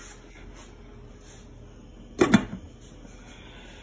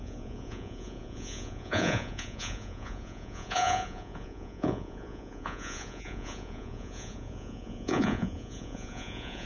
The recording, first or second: first